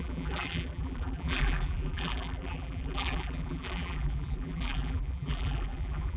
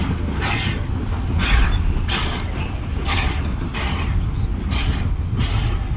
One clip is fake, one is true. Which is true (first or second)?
second